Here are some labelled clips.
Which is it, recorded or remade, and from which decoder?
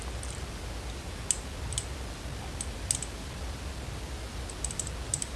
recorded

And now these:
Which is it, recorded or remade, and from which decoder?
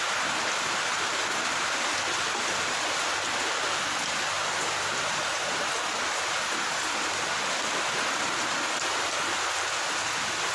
recorded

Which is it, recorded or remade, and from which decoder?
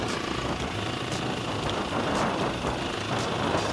recorded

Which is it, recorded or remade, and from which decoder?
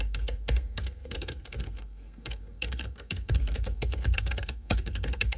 remade, codec, SNAC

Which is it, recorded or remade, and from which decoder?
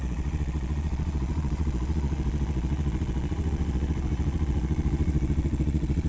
remade, vocoder, Vocos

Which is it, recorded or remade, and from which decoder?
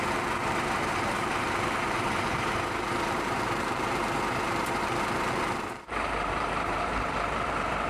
remade, vocoder, BigVGAN v2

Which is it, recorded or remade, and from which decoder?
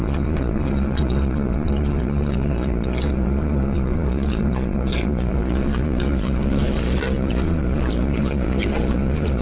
remade, vocoder, Vocos